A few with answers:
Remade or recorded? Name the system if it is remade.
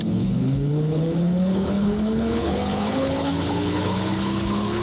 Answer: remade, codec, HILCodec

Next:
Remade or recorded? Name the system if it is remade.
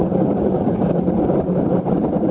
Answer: remade, vocoder, BigVGAN v2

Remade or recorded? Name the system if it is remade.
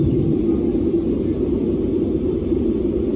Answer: recorded